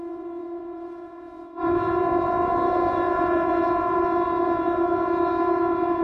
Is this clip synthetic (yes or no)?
yes